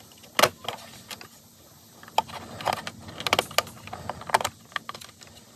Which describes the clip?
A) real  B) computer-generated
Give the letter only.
A